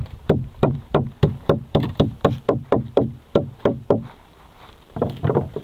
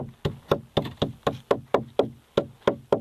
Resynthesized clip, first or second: first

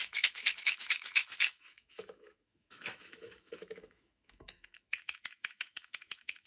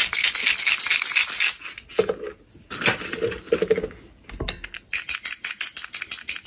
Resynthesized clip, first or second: first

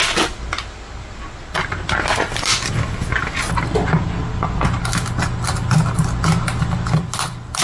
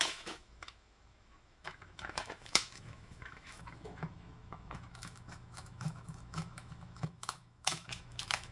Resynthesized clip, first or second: second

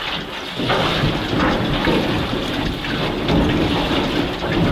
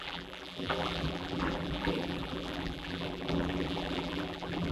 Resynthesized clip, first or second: second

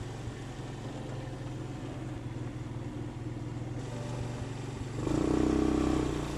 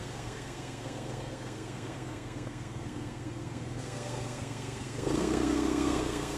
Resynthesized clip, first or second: second